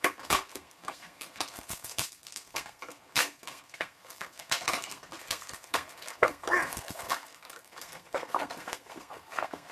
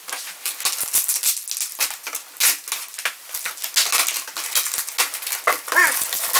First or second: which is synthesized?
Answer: first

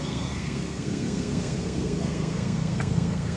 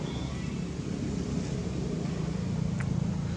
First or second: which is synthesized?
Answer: first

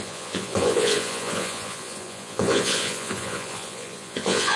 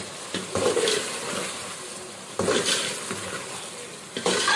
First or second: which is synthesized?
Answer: first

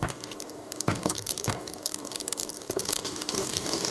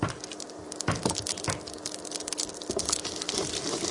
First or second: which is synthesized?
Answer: first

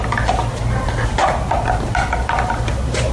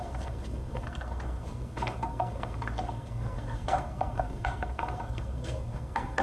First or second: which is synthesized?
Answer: second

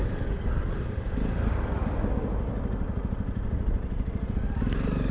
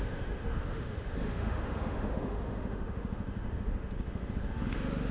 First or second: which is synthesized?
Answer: second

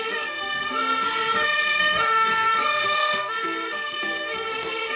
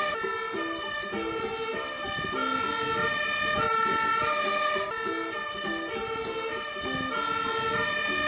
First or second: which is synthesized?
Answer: first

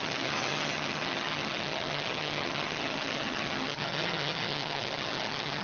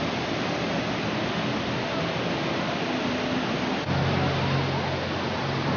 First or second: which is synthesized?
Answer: first